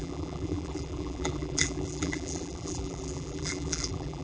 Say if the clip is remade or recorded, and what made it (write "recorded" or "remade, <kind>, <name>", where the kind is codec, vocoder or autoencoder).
remade, vocoder, BigVGAN v2